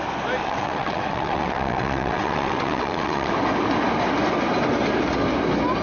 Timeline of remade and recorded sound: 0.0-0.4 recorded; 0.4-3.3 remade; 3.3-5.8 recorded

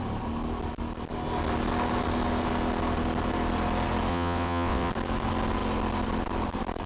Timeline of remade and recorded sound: 0.0-4.1 recorded; 4.1-4.9 remade; 4.9-6.9 recorded

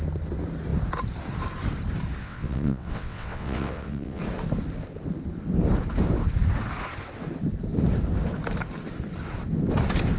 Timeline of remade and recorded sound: 0.0-2.2 recorded; 2.2-4.2 remade; 4.2-10.2 recorded

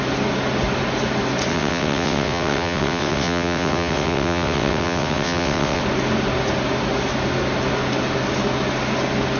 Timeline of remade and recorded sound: 0.0-1.5 recorded; 1.5-5.8 remade; 5.8-9.4 recorded

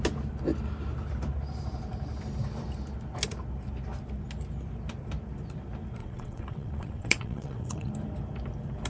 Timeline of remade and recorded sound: 0.0-6.0 recorded; 6.0-7.9 remade; 7.9-8.9 recorded